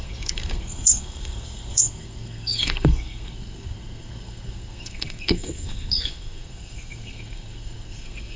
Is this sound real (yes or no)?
no